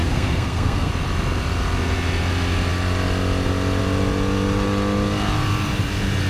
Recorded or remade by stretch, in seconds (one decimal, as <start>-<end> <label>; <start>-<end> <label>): 0.0-0.9 remade; 0.9-6.3 recorded